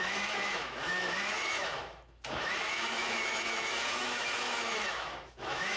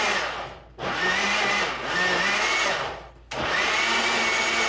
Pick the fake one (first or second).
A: first